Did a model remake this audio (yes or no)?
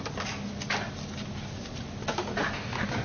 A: no